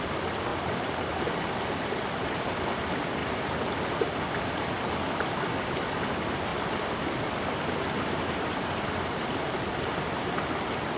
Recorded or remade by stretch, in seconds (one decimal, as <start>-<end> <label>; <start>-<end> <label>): 0.0-0.5 recorded; 0.5-2.4 remade; 2.4-6.5 recorded; 6.5-7.0 remade; 7.0-11.0 recorded